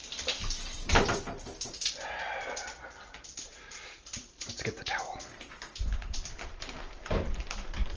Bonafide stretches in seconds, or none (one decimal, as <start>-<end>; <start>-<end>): 0.0-0.8